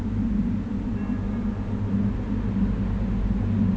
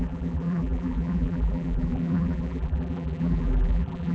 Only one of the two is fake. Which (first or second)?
second